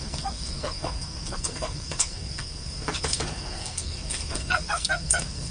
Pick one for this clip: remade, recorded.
remade